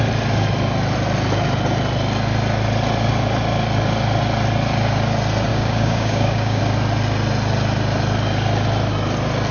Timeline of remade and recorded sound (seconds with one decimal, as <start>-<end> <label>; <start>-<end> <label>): 0.0-5.5 recorded; 5.5-6.6 remade; 6.6-9.5 recorded